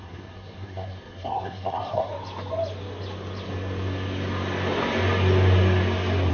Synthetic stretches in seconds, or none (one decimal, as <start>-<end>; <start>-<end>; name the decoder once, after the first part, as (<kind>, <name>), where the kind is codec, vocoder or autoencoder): 0.0-2.1 (codec, SNAC)